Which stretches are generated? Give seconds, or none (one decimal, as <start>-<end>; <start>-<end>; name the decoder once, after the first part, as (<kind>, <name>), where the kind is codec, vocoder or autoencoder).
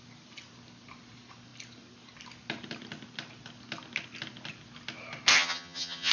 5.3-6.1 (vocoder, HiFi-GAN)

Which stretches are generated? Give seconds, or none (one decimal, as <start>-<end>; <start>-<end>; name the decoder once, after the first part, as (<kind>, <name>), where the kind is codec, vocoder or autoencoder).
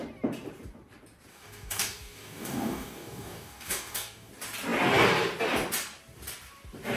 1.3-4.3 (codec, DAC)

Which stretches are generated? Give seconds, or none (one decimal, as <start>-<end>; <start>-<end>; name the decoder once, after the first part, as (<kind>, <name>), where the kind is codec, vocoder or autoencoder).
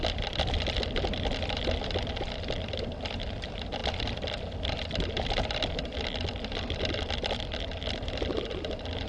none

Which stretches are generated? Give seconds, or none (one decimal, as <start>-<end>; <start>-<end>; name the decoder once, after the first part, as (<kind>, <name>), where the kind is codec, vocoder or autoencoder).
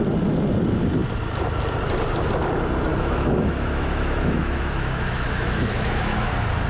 2.9-6.3 (autoencoder, DAC-VAE)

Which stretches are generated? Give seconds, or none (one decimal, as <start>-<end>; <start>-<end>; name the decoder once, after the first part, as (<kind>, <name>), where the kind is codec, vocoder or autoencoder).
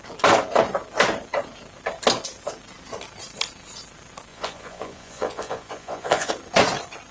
4.3-6.3 (vocoder, Vocos)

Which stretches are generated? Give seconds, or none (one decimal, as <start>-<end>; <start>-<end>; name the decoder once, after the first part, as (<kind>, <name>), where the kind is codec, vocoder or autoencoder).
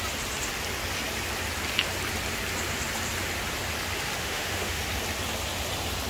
4.2-4.8 (autoencoder, DAC-VAE)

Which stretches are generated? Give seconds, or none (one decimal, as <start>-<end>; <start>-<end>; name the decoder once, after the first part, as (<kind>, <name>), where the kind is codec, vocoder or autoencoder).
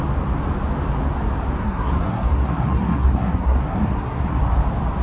1.6-4.4 (codec, SNAC)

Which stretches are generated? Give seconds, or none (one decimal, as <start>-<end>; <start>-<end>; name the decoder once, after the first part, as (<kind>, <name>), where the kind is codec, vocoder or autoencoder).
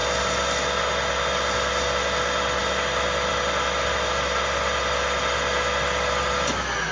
none